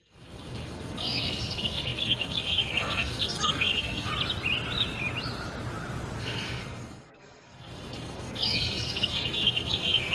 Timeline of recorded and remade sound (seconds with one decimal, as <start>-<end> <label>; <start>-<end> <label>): 0.0-4.1 remade; 4.1-6.2 recorded; 6.2-10.1 remade